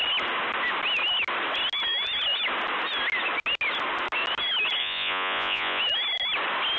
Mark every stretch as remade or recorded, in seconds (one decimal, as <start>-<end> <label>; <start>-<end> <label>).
0.0-4.8 recorded; 4.8-5.8 remade; 5.8-6.8 recorded